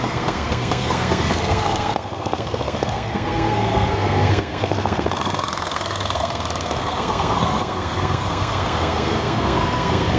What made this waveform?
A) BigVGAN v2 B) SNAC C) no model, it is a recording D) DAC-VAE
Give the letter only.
B